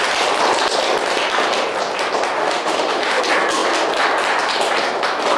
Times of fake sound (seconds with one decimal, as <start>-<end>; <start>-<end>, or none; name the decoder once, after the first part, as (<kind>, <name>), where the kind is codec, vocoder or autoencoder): 2.4-3.2 (autoencoder, DAC-VAE)